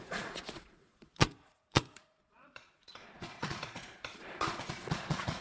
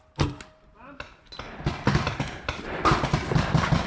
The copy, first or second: first